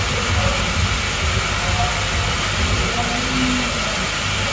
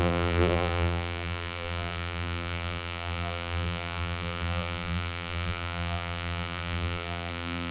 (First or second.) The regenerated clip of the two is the second